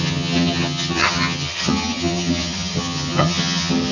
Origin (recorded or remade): remade